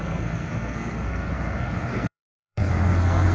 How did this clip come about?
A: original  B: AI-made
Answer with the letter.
B